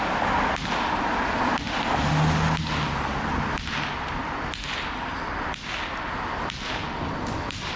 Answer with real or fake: real